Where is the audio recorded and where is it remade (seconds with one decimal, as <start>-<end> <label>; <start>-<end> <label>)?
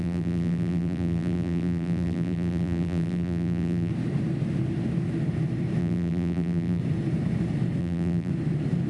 0.0-3.9 remade; 3.9-5.8 recorded; 5.8-6.8 remade; 6.8-7.8 recorded; 7.8-8.3 remade; 8.3-8.9 recorded